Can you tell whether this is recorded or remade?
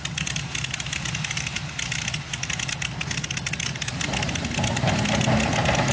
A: recorded